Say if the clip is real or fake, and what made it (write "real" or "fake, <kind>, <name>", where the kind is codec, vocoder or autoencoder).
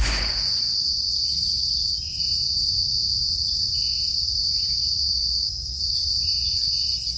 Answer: fake, vocoder, Vocos